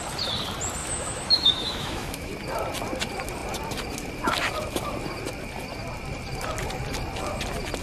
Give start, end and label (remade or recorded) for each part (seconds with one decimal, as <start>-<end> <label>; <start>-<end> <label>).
0.0-0.8 recorded; 0.8-2.3 remade; 2.3-7.8 recorded